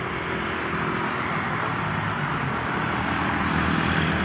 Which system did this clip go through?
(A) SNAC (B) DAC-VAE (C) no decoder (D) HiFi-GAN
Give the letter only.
C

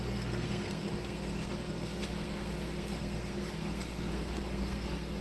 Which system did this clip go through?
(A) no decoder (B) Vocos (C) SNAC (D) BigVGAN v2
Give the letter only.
C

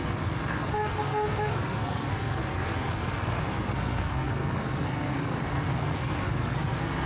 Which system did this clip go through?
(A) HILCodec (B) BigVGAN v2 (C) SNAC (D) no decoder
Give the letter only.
C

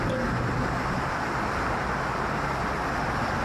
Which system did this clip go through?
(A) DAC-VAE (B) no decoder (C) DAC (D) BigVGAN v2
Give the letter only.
B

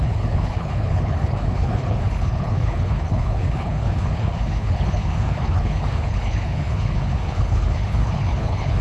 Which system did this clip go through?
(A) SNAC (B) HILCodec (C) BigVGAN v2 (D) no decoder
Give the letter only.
B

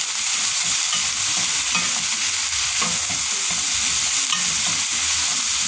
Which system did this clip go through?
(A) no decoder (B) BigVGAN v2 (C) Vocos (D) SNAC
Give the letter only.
A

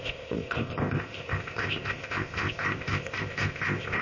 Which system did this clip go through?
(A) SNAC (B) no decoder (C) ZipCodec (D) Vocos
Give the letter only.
C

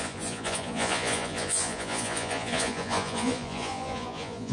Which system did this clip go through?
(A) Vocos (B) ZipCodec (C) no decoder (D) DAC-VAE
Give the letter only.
A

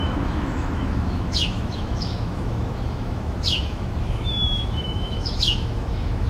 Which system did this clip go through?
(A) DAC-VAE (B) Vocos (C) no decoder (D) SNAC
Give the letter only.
A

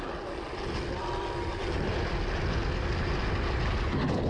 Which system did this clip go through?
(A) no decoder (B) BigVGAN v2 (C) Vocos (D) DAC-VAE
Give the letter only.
A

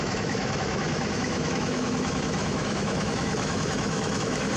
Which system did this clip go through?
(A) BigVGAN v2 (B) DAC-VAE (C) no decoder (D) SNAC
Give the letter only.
B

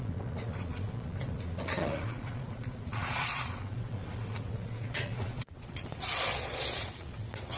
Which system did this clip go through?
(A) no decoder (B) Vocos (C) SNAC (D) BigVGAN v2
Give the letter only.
B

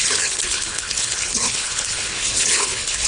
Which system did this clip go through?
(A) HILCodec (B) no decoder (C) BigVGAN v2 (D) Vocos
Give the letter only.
A